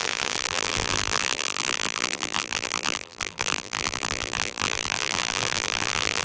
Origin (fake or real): fake